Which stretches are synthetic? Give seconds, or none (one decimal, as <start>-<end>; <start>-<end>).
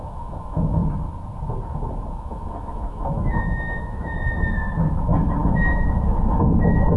0.0-0.8; 2.1-7.0